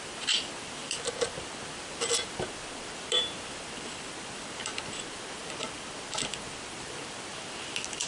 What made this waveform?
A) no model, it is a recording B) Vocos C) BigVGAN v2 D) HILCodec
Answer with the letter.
C